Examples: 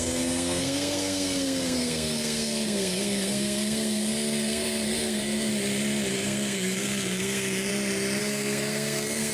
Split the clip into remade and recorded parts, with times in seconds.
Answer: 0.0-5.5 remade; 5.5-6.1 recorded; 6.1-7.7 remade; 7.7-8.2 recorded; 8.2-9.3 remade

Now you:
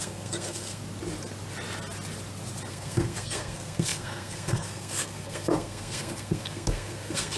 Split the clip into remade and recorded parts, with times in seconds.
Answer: 0.0-0.8 remade; 0.8-2.7 recorded; 2.7-7.4 remade

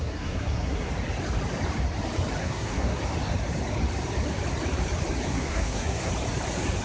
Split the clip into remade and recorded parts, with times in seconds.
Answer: 0.0-0.9 remade; 0.9-2.4 recorded; 2.4-3.0 remade; 3.0-5.3 recorded; 5.3-6.1 remade; 6.1-6.8 recorded

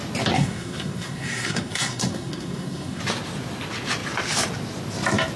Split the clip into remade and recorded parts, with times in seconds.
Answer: 0.0-0.4 recorded; 0.4-3.0 remade; 3.0-5.4 recorded

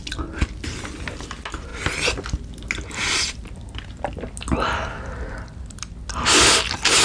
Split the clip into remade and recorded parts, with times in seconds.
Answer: 0.0-7.0 recorded

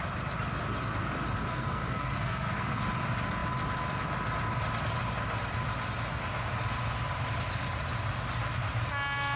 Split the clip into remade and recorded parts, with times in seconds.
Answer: 0.0-1.5 recorded; 1.5-2.8 remade; 2.8-9.4 recorded

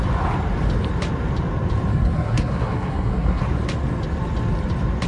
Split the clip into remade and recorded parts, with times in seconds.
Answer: 0.0-1.9 recorded; 1.9-3.4 remade; 3.4-5.1 recorded

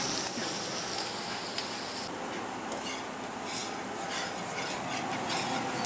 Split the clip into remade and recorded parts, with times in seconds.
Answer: 0.0-5.9 recorded